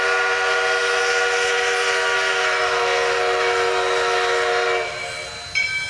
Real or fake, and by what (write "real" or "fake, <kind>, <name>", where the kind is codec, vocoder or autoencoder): real